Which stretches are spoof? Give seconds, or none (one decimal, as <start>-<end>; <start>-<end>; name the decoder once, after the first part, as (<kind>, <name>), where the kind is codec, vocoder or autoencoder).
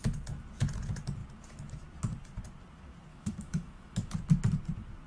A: 3.1-4.1 (autoencoder, DAC-VAE)